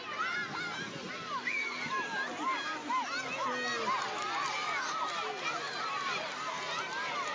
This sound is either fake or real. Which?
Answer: real